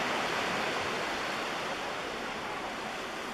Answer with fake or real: real